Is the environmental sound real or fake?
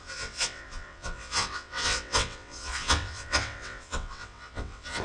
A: fake